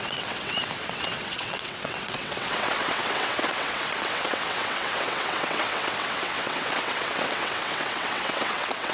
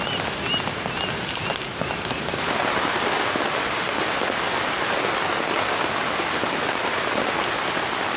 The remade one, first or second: first